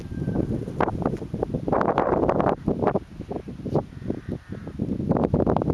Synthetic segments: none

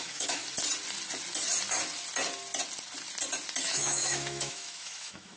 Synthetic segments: 0.0-0.4; 3.6-5.4

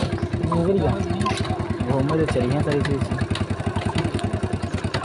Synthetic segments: none

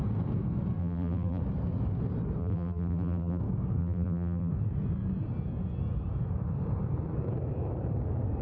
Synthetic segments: 0.8-1.4; 2.4-3.4; 3.8-4.5

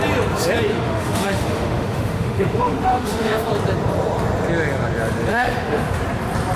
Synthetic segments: 0.7-3.5; 5.3-6.0